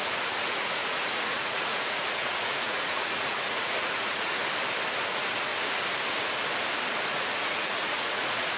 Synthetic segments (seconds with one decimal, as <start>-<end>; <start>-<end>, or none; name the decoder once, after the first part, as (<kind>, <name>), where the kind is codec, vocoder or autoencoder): 0.0-4.4 (vocoder, Vocos); 5.1-5.5; 7.1-8.6

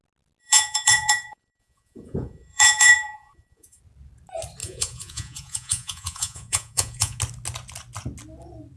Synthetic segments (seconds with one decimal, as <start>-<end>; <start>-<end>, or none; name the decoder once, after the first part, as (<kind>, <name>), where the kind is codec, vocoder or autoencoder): 0.4-3.8 (vocoder, Vocos); 4.6-7.2

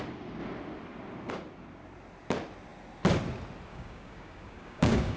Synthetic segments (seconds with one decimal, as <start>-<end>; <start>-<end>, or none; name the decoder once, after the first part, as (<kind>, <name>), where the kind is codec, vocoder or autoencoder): 3.7-5.2 (codec, DAC)

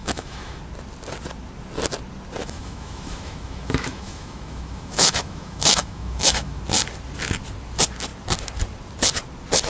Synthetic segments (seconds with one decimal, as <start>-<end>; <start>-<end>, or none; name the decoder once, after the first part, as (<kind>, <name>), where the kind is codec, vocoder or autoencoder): 0.0-0.6 (autoencoder, DAC-VAE); 2.4-6.6

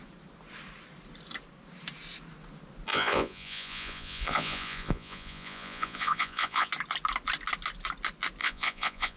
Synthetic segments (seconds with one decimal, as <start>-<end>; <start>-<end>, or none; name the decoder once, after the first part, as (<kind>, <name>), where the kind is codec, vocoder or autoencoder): 2.9-6.7 (vocoder, Vocos); 8.4-9.2